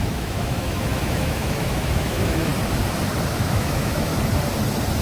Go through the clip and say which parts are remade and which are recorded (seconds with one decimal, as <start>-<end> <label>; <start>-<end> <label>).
0.0-2.5 remade; 2.5-3.3 recorded; 3.3-4.1 remade; 4.1-5.0 recorded